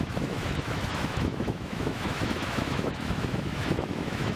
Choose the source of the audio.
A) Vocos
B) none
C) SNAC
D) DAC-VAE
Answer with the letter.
D